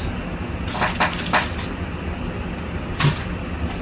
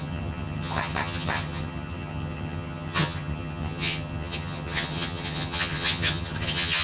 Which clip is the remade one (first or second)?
second